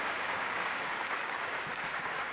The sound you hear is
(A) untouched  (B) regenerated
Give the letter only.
B